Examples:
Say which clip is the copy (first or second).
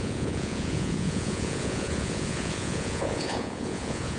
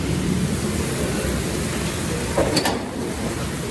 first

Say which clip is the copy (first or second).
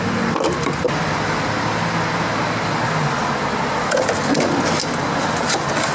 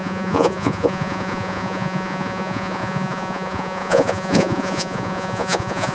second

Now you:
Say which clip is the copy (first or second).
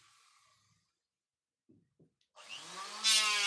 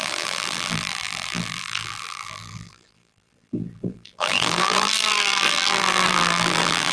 second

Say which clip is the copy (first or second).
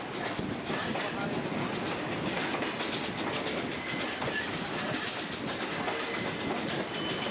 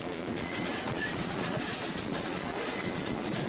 second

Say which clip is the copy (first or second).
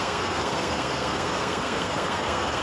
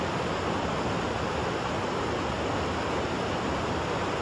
first